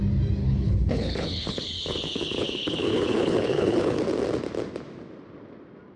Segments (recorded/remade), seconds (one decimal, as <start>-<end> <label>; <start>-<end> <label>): 0.0-0.4 recorded; 0.4-4.0 remade; 4.0-6.0 recorded